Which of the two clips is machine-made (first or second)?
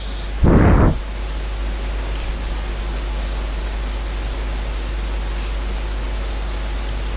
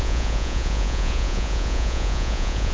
second